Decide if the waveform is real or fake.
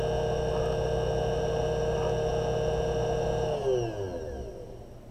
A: real